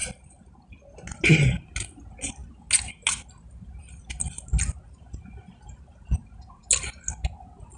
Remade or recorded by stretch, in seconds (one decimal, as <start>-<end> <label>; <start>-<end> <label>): 0.0-7.8 recorded